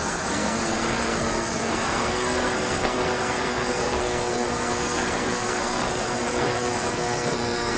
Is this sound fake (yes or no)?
yes